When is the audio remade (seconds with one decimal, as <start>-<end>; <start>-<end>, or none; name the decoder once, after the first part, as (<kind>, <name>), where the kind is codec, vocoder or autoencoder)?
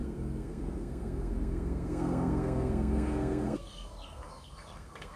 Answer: 0.0-5.2 (codec, SNAC)